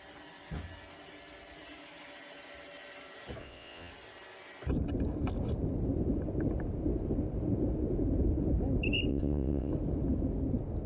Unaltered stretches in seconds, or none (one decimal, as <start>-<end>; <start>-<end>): 0.0-3.4; 3.9-9.1; 9.7-10.9